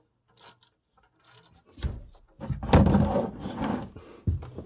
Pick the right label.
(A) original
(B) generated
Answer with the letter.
A